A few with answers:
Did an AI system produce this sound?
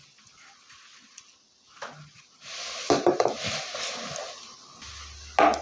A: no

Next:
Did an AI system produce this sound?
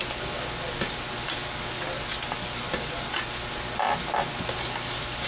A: no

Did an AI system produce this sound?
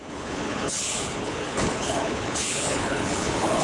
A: yes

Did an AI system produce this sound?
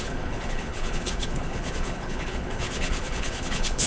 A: yes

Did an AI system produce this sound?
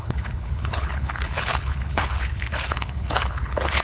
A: yes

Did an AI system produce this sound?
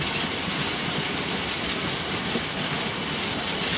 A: no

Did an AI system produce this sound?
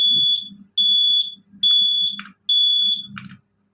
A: no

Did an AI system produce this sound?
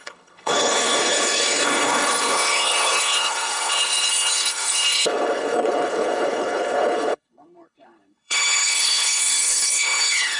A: yes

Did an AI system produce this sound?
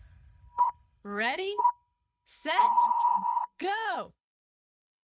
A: yes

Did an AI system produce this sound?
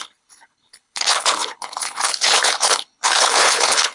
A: yes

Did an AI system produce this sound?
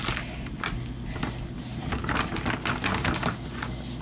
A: no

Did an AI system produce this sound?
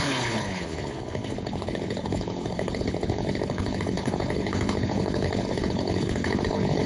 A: yes